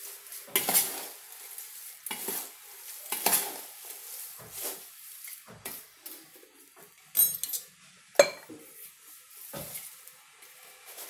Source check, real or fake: real